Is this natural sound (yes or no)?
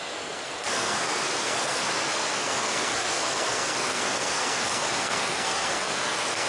no